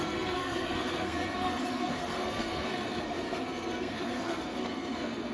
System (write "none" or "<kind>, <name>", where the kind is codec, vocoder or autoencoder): codec, SNAC